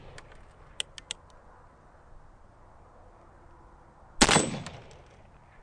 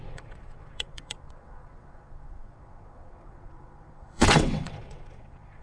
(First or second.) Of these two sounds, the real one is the first